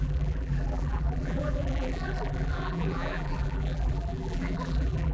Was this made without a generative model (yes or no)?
no